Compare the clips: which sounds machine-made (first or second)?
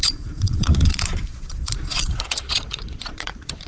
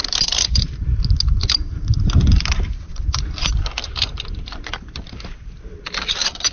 first